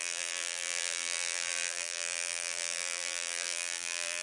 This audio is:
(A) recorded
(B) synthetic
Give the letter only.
B